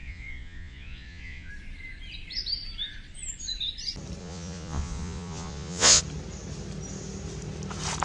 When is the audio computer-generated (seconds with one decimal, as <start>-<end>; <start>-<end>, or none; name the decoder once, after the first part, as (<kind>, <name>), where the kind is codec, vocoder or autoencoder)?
0.0-1.5 (vocoder, Vocos); 4.2-6.0